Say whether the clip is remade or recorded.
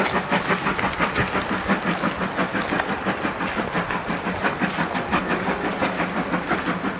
recorded